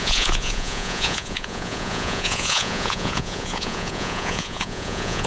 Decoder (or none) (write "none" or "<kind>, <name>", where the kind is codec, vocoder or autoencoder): vocoder, Vocos